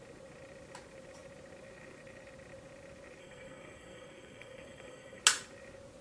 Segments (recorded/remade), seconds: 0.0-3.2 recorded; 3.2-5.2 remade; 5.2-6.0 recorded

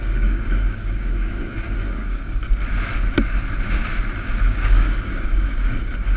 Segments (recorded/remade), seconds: 0.0-2.4 remade; 2.4-4.4 recorded; 4.4-6.2 remade

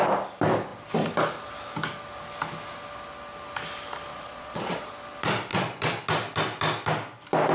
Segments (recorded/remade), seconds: 0.0-4.1 recorded; 4.1-4.9 remade; 4.9-5.5 recorded; 5.5-6.0 remade; 6.0-7.5 recorded

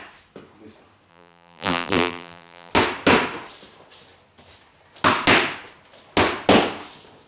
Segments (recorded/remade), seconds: 0.0-1.1 recorded; 1.1-2.7 remade; 2.7-7.3 recorded

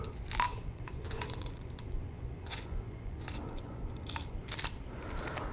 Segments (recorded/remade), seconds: 0.0-0.5 recorded; 0.5-3.8 remade; 3.8-5.5 recorded